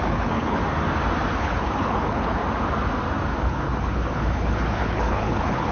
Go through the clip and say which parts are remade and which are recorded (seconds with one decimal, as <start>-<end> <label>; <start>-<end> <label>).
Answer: 0.0-0.6 remade; 0.6-1.4 recorded; 1.4-2.4 remade; 2.4-3.4 recorded; 3.4-5.7 remade